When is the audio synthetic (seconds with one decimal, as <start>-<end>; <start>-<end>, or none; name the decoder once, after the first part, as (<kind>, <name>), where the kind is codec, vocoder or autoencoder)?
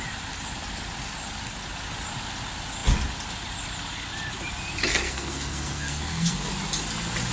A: 4.9-6.5 (codec, SNAC)